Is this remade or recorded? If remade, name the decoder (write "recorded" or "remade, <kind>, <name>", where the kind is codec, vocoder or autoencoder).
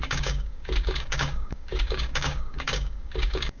remade, codec, DAC